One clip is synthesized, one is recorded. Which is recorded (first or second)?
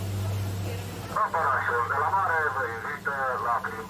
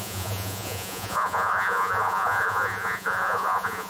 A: first